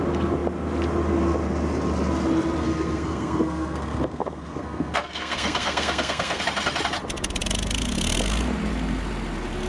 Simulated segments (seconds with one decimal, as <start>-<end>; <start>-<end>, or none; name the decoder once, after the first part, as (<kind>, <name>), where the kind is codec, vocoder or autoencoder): 2.6-6.4 (codec, SNAC)